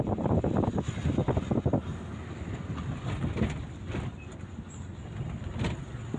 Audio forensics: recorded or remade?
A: recorded